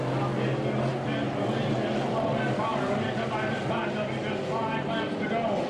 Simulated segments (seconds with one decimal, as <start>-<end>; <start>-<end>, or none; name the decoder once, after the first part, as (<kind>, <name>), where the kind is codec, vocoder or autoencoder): none